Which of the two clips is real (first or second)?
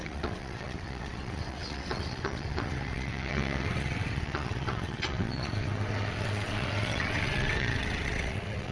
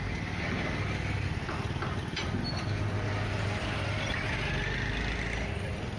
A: second